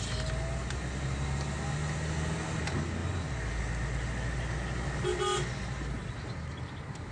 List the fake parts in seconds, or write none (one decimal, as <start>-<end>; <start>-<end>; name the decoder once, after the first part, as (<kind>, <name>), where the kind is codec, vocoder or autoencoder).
none